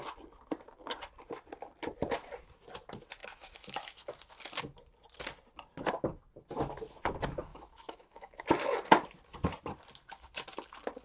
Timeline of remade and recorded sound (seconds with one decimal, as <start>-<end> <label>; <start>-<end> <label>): 0.0-3.2 recorded; 3.2-4.2 remade; 4.2-7.5 recorded; 7.5-8.4 remade; 8.4-11.0 recorded